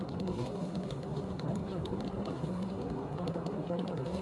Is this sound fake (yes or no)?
yes